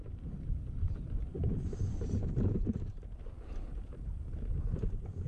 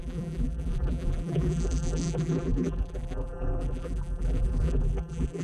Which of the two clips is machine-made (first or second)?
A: second